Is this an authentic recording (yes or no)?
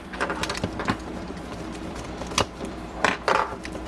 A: no